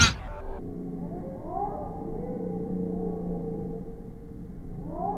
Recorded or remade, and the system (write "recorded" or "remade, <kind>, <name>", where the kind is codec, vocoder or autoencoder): recorded